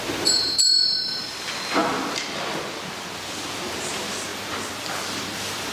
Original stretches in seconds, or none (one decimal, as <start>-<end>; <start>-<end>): 0.0-5.7